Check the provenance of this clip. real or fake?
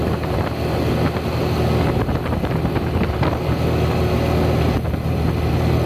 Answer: real